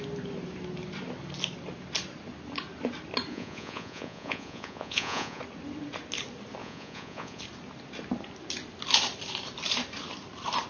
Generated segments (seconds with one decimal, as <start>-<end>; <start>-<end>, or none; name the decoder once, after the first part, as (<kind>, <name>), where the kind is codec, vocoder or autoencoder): 3.3-5.4 (vocoder, Vocos); 6.6-7.4